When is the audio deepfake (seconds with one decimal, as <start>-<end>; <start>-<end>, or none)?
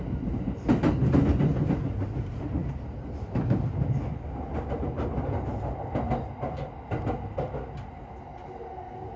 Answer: none